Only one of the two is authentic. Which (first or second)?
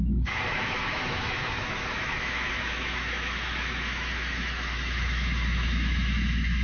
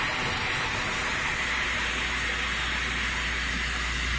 second